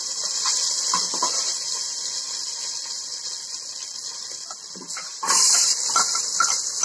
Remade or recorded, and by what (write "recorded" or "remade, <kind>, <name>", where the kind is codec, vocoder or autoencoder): recorded